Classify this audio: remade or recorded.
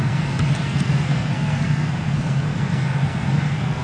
remade